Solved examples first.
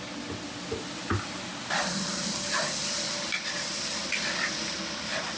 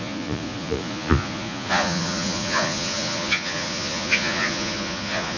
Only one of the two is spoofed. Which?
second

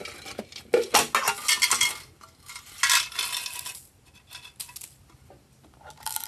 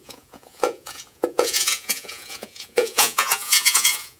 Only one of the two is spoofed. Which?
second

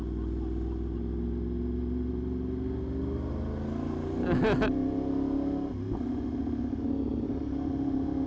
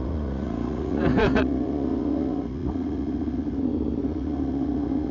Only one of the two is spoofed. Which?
second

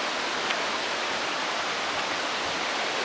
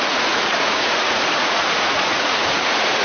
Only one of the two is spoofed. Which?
second